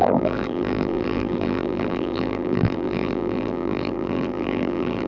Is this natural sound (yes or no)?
no